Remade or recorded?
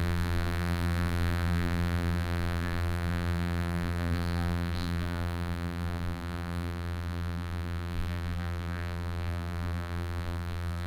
remade